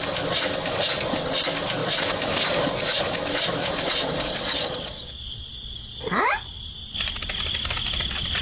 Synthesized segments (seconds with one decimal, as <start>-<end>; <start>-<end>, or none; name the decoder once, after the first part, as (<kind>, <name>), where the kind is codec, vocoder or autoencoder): 3.6-6.2 (vocoder, Vocos)